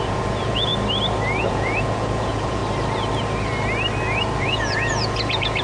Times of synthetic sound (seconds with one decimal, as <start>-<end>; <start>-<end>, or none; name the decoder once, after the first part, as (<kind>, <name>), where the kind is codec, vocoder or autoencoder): 0.0-0.7 (vocoder, Vocos); 1.4-2.6; 4.4-5.6